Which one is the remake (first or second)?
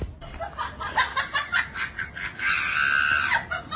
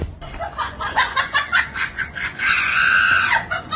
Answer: second